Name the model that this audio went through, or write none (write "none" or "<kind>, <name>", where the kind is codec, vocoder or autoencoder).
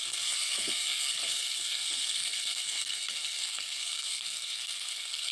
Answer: codec, SNAC